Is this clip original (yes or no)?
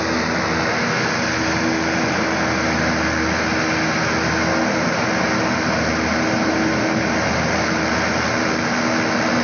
yes